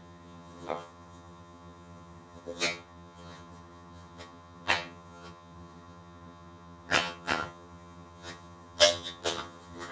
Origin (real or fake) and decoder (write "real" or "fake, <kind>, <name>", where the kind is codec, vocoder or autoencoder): fake, vocoder, HiFi-GAN